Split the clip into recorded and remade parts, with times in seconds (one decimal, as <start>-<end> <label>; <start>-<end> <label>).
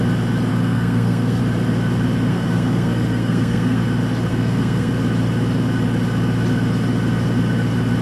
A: 0.0-0.5 recorded; 0.5-1.4 remade; 1.4-2.3 recorded; 2.3-3.8 remade; 3.8-4.3 recorded; 4.3-4.9 remade; 4.9-8.0 recorded